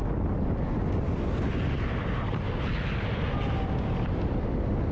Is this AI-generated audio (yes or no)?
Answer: no